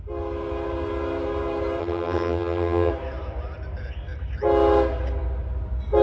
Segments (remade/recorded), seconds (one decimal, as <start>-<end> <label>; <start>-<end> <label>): 0.0-1.8 recorded; 1.8-2.9 remade; 2.9-6.0 recorded